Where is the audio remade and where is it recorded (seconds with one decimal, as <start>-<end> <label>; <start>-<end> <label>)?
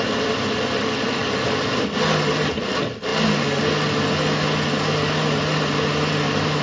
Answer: 0.0-6.6 recorded